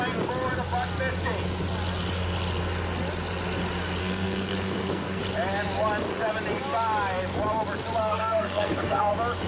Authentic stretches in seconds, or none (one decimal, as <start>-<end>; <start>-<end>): 0.0-4.0; 5.2-8.0; 9.1-9.5